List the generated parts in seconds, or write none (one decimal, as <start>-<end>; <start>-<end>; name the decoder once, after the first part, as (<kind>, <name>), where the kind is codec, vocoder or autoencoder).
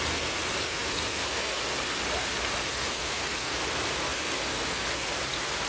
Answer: none